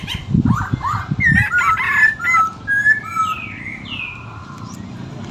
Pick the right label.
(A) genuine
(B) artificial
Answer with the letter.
A